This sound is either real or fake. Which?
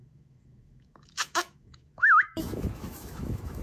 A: fake